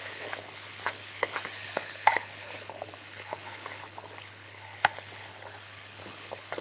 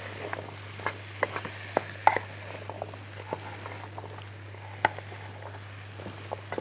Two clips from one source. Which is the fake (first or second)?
first